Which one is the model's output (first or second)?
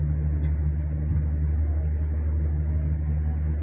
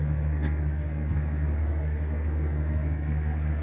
second